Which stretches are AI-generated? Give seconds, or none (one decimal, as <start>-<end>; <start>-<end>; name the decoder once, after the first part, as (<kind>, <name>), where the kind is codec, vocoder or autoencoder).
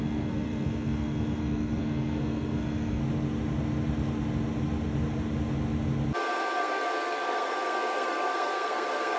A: 0.0-3.0 (codec, SNAC); 6.6-9.2